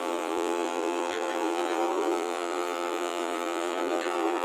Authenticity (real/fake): fake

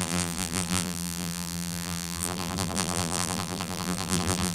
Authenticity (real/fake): fake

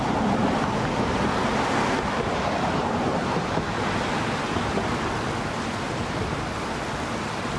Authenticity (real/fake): real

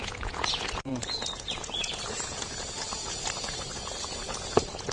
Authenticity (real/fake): fake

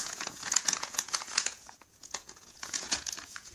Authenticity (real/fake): fake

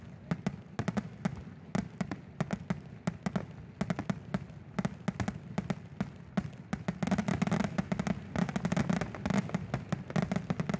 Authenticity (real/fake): real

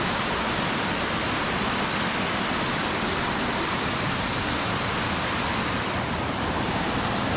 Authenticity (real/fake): real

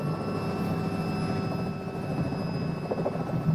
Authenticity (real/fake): real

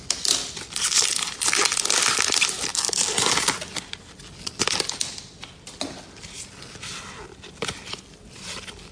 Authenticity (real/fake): real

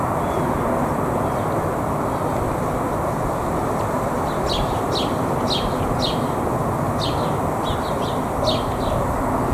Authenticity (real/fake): real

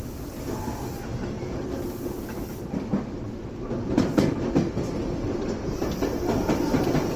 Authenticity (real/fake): real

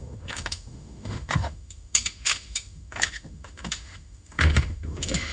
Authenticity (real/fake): fake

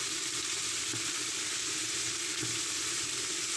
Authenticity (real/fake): real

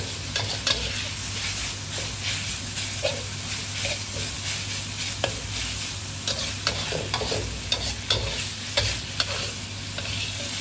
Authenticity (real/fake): real